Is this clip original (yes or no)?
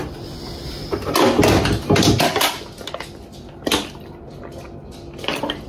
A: yes